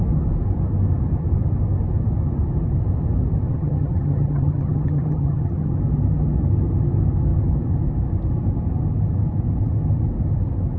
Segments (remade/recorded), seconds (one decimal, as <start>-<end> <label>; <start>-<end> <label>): 0.0-3.5 recorded; 3.5-5.8 remade; 5.8-10.8 recorded